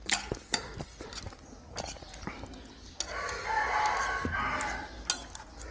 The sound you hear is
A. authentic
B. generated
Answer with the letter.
A